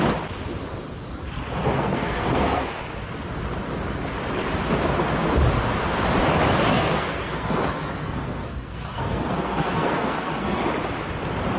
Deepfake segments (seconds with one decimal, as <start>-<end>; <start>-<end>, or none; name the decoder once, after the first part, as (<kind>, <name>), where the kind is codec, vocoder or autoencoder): 1.6-2.8 (codec, SNAC); 6.7-10.6